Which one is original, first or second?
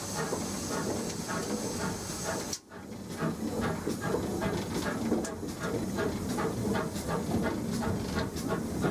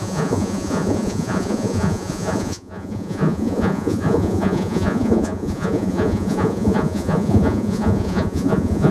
first